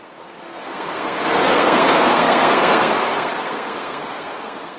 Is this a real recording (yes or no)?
no